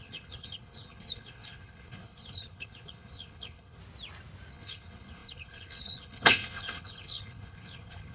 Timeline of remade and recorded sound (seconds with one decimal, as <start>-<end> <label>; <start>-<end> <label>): 0.0-3.8 remade; 3.8-4.5 recorded; 4.5-8.1 remade